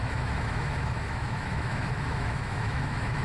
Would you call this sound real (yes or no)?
no